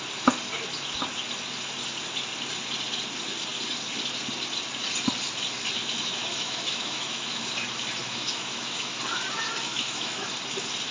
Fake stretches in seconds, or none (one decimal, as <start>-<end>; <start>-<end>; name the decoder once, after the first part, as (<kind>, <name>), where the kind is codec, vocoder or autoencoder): 5.8-7.5 (autoencoder, DAC-VAE); 8.0-9.0; 9.7-10.3